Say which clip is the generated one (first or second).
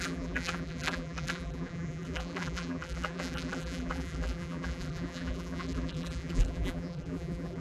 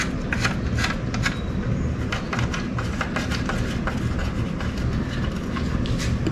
first